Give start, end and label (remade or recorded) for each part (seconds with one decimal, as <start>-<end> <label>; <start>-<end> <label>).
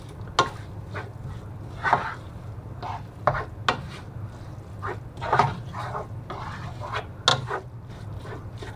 0.0-8.8 recorded